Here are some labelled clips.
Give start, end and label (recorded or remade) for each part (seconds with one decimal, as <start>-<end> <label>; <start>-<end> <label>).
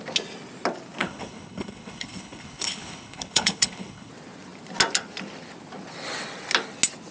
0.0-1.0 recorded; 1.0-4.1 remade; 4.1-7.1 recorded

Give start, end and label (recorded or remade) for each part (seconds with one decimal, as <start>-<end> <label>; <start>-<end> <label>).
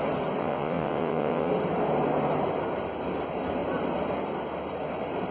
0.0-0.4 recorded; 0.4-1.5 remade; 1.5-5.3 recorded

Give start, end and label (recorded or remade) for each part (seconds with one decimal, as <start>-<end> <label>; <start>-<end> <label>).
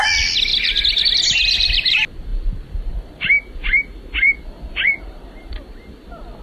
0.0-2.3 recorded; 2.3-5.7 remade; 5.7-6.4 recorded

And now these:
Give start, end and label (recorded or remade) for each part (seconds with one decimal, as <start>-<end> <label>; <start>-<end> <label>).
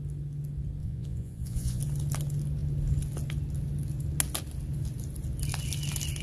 0.0-0.8 recorded; 0.8-1.8 remade; 1.8-6.2 recorded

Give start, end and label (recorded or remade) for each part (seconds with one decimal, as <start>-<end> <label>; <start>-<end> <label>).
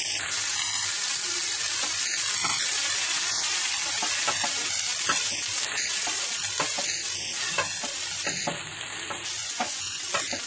0.0-9.4 recorded; 9.4-10.0 remade; 10.0-10.5 recorded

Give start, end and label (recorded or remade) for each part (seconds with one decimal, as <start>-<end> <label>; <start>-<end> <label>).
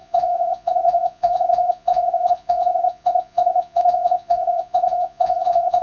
0.0-5.8 remade